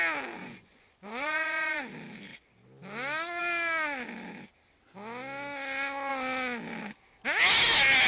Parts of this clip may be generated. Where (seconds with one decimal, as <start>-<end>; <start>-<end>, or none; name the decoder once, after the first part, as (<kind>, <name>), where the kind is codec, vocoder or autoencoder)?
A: 0.4-1.8 (vocoder, Vocos)